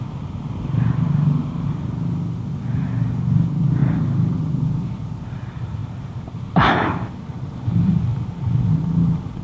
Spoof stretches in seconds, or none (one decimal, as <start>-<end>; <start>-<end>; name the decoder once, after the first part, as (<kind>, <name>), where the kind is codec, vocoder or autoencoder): none